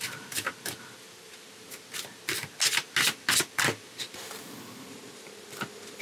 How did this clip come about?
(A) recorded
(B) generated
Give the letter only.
A